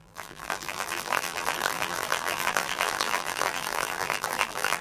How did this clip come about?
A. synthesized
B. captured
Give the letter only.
A